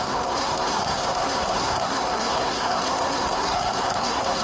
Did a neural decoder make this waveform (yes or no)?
yes